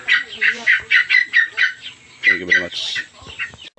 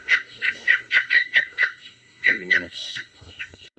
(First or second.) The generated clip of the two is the second